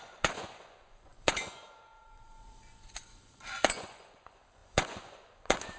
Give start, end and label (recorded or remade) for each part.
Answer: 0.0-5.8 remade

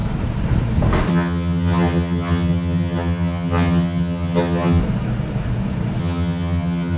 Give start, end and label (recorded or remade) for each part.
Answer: 0.0-1.1 recorded; 1.1-4.8 remade; 4.8-6.0 recorded; 6.0-7.0 remade

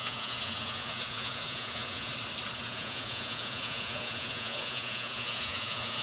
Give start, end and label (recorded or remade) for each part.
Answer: 0.0-2.1 remade; 2.1-2.6 recorded; 2.6-6.0 remade

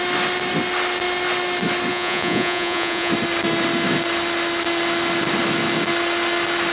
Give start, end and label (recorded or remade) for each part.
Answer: 0.0-1.9 recorded; 1.9-3.1 remade; 3.1-6.7 recorded

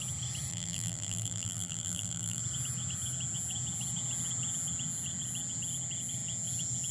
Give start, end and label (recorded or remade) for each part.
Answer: 0.0-0.5 recorded; 0.5-2.4 remade; 2.4-6.9 recorded

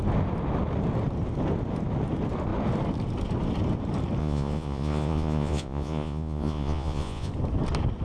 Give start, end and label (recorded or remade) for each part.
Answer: 0.0-4.2 recorded; 4.2-7.3 remade; 7.3-8.0 recorded